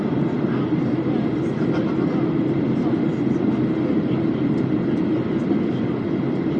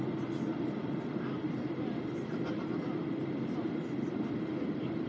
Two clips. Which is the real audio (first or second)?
first